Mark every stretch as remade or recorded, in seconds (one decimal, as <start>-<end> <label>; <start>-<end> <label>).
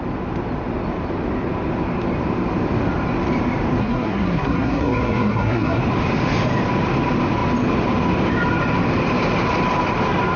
0.0-3.8 recorded; 3.8-5.8 remade; 5.8-10.4 recorded